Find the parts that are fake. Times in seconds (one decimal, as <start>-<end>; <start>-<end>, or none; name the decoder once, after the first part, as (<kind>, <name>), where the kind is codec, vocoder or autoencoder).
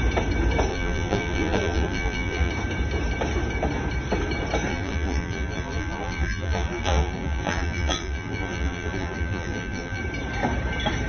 0.7-2.5 (vocoder, BigVGAN v2); 4.7-10.0